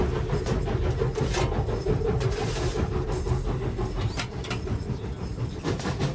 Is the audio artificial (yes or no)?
no